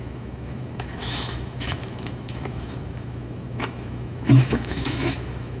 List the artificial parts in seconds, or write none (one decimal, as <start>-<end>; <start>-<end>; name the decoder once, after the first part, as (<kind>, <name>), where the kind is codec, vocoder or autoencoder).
0.0-5.6 (autoencoder, DAC-VAE)